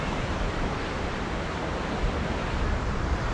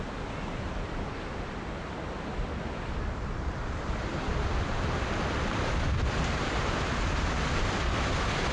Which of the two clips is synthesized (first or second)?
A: first